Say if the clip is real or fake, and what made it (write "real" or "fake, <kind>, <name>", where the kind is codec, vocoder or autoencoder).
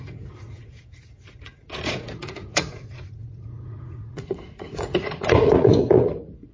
fake, vocoder, Vocos